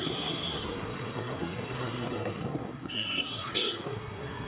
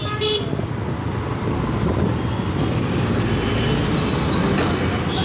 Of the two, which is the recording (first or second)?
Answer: second